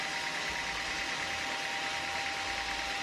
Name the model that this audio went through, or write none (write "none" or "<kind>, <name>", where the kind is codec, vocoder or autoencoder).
none